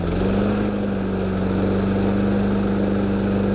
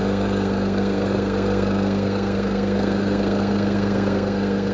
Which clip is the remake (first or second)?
second